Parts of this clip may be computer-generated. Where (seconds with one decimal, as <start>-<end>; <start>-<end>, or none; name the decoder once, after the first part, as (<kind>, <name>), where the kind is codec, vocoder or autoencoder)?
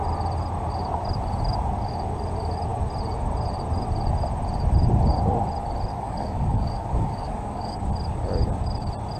5.9-7.8 (codec, DAC)